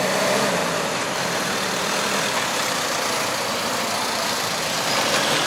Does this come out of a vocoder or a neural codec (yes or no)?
yes